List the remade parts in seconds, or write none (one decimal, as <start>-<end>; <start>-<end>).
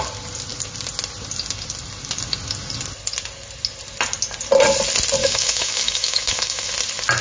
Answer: 5.2-6.7